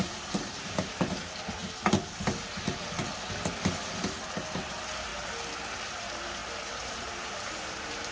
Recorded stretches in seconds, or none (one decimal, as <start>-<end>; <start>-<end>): 1.6-2.4; 3.0-4.5; 5.1-5.8